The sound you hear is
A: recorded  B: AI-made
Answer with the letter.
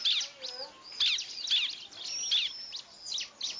A